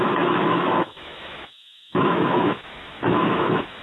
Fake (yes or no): yes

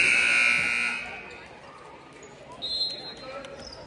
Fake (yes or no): no